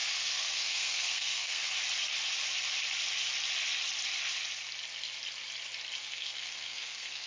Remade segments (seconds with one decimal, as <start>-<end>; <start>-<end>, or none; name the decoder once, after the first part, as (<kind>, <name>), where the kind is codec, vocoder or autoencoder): 0.0-1.6 (codec, SNAC); 6.0-7.3